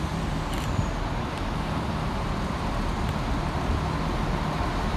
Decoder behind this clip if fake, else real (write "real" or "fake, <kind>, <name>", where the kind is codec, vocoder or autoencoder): fake, vocoder, BigVGAN v2